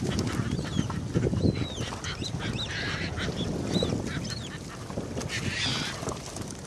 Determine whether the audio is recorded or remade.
recorded